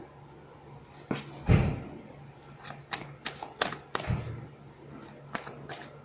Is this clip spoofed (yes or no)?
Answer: no